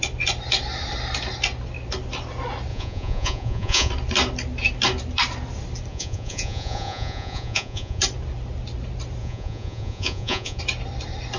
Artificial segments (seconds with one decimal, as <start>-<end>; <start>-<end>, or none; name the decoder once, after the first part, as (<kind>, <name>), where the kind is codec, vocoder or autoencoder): 2.7-3.9 (vocoder, Vocos); 5.9-8.0; 9.2-10.6